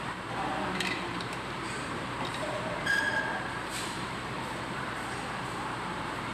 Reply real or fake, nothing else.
fake